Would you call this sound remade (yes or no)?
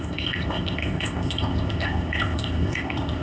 yes